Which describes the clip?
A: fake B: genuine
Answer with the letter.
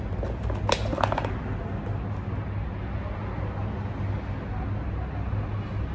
B